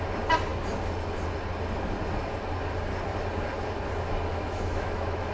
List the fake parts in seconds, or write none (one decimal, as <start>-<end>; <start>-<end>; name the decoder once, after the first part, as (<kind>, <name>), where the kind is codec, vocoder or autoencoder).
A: 4.3-5.3 (autoencoder, DAC-VAE)